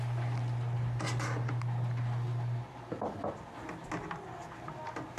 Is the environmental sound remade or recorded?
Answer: recorded